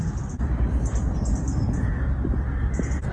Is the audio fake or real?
real